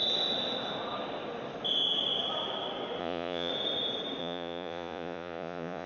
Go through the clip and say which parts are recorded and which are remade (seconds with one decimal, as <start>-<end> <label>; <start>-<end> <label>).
0.0-3.0 recorded; 3.0-3.5 remade; 3.5-4.2 recorded; 4.2-5.9 remade